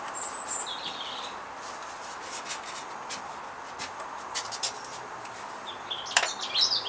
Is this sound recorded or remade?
recorded